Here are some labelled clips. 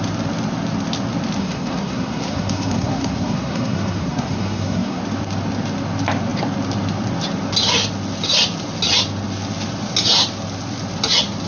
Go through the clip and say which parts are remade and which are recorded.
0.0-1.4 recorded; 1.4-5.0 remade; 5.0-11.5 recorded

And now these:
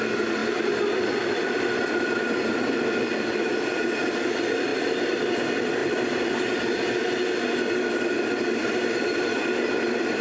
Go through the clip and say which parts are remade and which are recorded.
0.0-0.4 recorded; 0.4-3.0 remade; 3.0-4.7 recorded; 4.7-5.3 remade; 5.3-8.6 recorded; 8.6-9.1 remade; 9.1-10.2 recorded

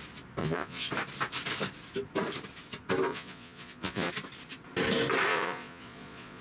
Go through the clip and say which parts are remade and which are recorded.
0.0-0.4 recorded; 0.4-0.9 remade; 0.9-3.1 recorded; 3.1-4.1 remade; 4.1-5.3 recorded; 5.3-6.4 remade

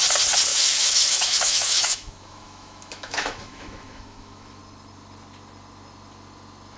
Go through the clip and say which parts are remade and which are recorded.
0.0-0.5 recorded; 0.5-4.6 remade; 4.6-6.8 recorded

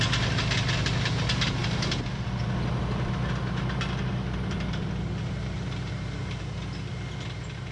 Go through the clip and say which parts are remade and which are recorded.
0.0-7.7 recorded

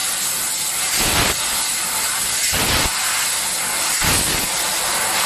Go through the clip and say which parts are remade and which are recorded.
0.0-5.3 recorded

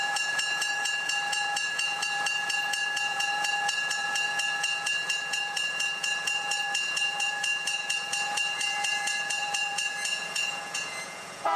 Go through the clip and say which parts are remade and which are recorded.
0.0-11.6 remade